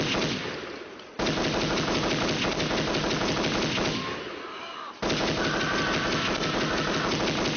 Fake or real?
real